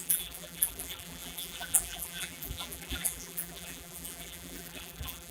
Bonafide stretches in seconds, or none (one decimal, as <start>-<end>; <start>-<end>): none